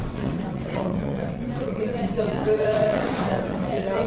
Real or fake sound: fake